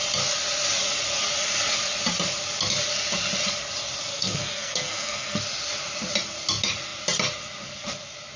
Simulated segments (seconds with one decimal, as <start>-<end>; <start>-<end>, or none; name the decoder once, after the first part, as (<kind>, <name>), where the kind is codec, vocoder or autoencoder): 4.1-5.4 (codec, SNAC)